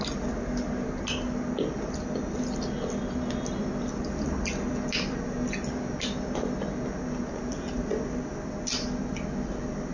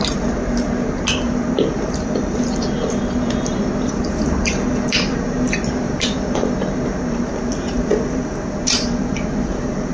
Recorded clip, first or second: first